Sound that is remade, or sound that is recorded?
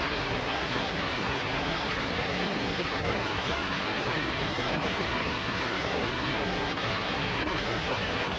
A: remade